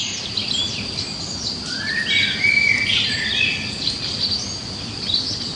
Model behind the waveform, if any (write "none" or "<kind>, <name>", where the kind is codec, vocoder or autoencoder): none